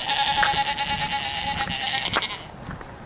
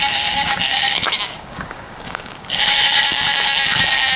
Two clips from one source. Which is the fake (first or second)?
second